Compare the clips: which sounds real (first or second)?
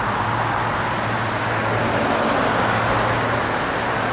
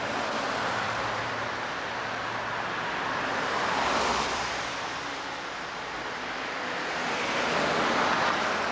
first